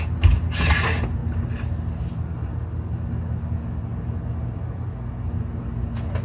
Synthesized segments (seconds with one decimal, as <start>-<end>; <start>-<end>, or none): none